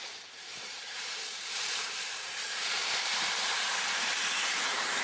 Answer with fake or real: fake